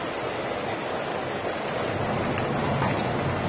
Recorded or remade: recorded